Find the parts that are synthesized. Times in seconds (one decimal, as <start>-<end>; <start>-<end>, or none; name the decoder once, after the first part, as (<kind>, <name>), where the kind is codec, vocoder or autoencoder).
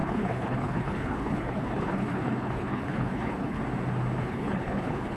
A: 0.0-3.6 (codec, HILCodec); 4.2-5.2